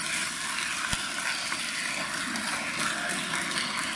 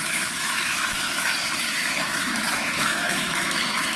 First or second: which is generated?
second